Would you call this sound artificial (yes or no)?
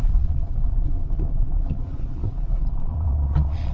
yes